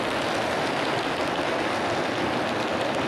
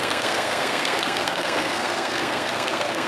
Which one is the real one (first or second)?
first